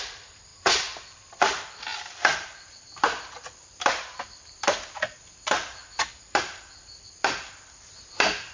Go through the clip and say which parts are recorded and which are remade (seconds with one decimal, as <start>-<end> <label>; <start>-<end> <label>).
0.0-0.5 remade; 0.5-1.4 recorded; 1.4-5.8 remade; 5.8-6.4 recorded; 6.4-8.5 remade